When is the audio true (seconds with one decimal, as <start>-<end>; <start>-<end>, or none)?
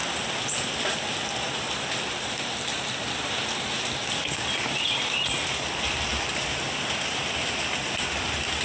0.0-8.6